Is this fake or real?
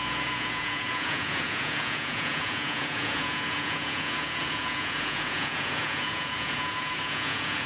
fake